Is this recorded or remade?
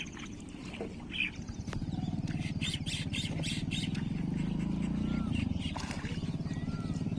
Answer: recorded